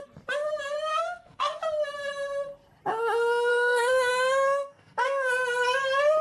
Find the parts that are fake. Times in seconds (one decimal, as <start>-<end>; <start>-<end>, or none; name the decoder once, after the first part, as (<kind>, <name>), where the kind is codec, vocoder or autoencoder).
0.9-1.6 (codec, SNAC); 3.5-4.1; 4.6-5.3